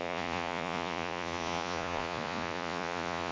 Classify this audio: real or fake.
fake